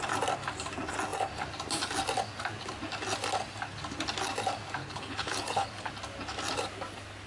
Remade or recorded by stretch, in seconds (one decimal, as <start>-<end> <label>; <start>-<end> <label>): 0.0-4.8 recorded; 4.8-5.9 remade; 5.9-7.3 recorded